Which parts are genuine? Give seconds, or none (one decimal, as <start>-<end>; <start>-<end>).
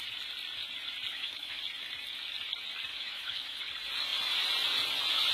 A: 0.0-1.1; 1.6-2.9; 3.6-5.3